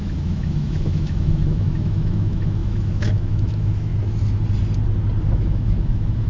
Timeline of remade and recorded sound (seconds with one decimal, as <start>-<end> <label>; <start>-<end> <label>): 0.0-3.9 remade; 3.9-5.3 recorded; 5.3-6.3 remade